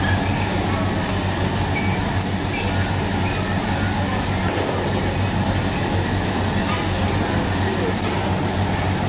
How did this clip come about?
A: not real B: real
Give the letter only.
B